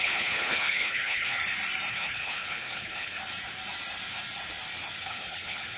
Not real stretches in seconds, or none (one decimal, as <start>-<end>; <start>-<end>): 0.0-1.4; 1.9-3.2; 5.0-5.8